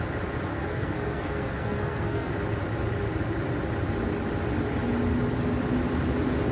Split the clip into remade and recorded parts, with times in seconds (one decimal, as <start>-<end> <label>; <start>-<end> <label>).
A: 0.0-0.5 recorded; 0.5-2.3 remade; 2.3-6.5 recorded